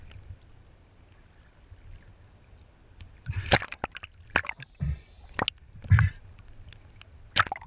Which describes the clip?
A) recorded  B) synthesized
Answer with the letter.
A